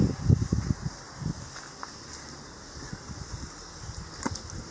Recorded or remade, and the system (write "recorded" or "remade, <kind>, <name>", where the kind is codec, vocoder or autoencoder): recorded